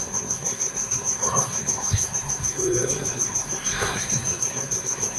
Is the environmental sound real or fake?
fake